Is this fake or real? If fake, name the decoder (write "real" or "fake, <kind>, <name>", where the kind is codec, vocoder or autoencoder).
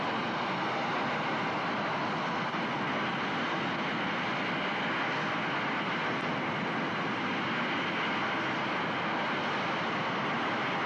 real